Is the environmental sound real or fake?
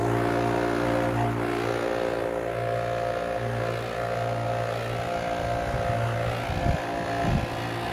real